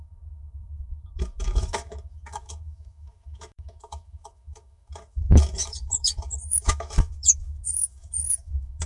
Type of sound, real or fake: fake